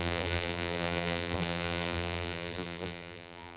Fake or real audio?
fake